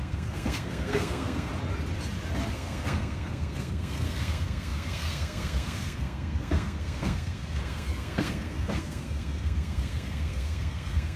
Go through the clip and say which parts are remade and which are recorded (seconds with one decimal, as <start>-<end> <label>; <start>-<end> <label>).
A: 0.0-1.5 remade; 1.5-2.5 recorded; 2.5-11.2 remade